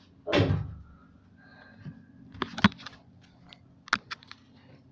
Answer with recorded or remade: recorded